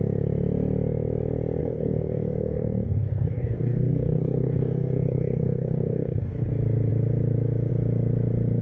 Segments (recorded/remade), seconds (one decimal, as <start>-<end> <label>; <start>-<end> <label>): 0.0-1.6 recorded; 1.6-6.5 remade; 6.5-8.6 recorded